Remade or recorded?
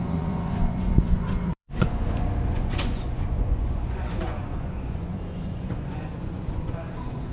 remade